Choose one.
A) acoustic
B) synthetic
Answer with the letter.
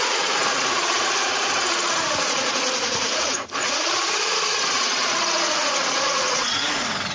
B